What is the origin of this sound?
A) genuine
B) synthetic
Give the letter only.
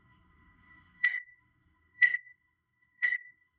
B